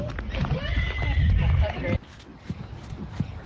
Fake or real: real